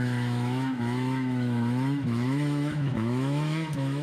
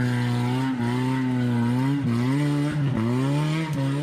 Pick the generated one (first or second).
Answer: first